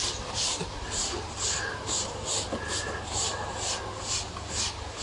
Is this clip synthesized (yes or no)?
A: no